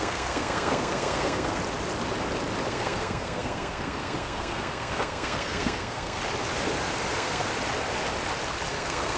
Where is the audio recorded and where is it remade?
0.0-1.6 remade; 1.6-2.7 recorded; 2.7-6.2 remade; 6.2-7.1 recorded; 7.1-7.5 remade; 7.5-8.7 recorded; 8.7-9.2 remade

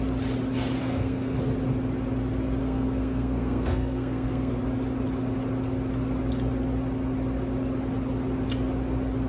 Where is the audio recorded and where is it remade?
0.0-0.8 recorded; 0.8-1.4 remade; 1.4-2.6 recorded; 2.6-4.6 remade; 4.6-9.3 recorded

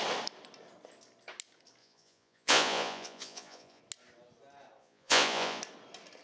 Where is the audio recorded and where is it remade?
0.0-1.8 recorded; 1.8-3.8 remade; 3.8-4.8 recorded; 4.8-5.6 remade; 5.6-6.2 recorded

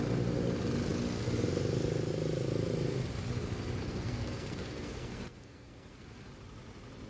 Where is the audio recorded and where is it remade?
0.0-3.8 recorded; 3.8-6.3 remade; 6.3-7.1 recorded

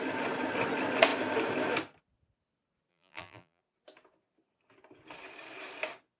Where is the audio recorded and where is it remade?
0.0-2.9 recorded; 2.9-3.6 remade; 3.6-6.2 recorded

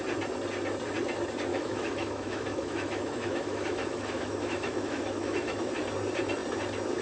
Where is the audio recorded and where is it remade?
0.0-1.5 recorded; 1.5-5.7 remade; 5.7-7.0 recorded